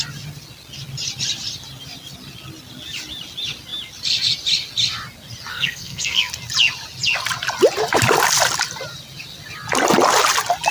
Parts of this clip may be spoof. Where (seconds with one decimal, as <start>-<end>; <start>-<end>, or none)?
5.5-6.3